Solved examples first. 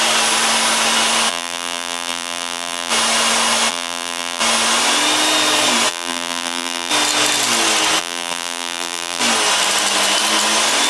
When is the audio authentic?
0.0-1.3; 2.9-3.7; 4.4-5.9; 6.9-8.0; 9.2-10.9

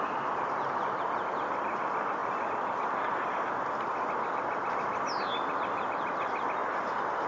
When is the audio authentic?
0.0-7.3

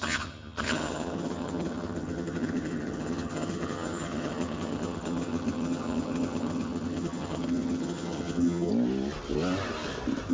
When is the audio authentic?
8.7-10.3

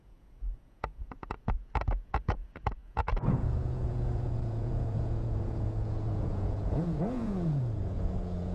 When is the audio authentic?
none

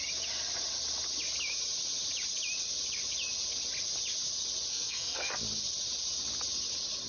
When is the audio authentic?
0.0-4.7; 5.3-7.1

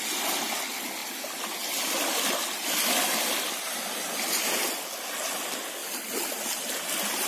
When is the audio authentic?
0.0-7.3

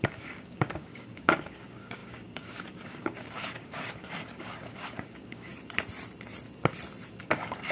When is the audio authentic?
5.5-7.2